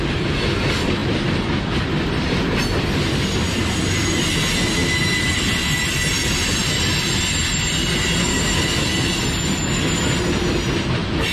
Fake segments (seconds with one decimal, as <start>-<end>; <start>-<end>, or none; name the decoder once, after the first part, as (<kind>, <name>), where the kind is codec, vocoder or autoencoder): none